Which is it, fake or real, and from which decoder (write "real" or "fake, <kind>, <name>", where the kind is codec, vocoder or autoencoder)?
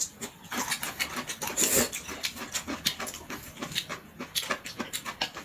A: real